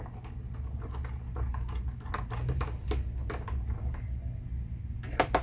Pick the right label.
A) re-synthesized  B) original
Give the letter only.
B